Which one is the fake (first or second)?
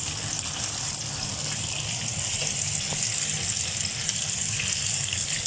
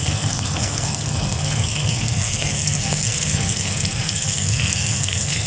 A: second